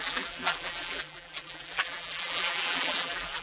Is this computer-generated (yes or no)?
yes